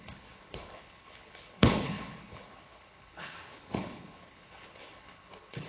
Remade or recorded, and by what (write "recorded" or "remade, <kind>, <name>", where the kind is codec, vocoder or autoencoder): remade, codec, HILCodec